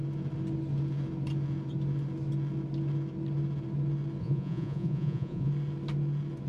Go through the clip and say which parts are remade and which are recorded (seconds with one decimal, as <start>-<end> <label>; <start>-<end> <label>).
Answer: 0.0-4.2 recorded; 4.2-5.5 remade; 5.5-6.5 recorded